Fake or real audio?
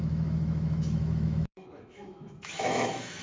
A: fake